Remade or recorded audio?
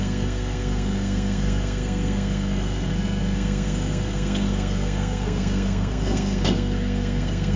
remade